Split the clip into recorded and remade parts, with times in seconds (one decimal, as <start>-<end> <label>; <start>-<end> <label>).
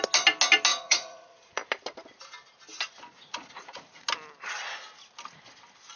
0.0-0.7 recorded; 0.7-1.6 remade; 1.6-3.3 recorded; 3.3-4.0 remade; 4.0-6.0 recorded